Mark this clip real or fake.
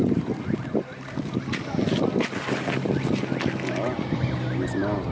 real